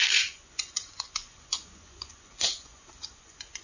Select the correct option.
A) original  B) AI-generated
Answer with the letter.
B